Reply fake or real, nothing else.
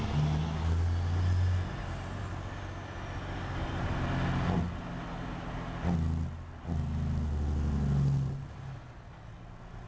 real